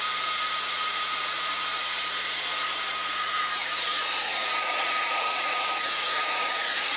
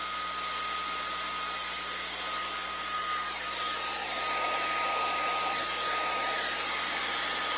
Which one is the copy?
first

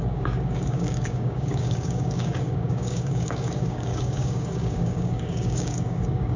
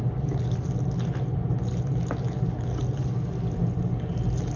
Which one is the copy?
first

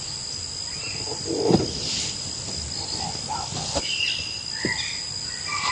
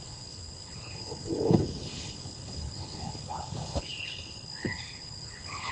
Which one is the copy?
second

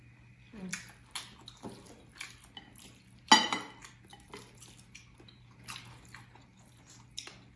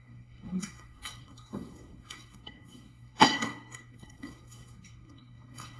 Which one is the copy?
second